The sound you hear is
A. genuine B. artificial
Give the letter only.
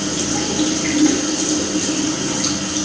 A